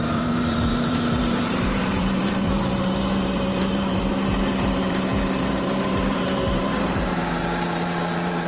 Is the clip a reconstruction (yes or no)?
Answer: yes